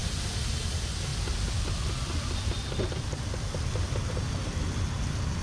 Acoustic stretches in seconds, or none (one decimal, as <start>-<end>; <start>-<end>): 0.0-5.4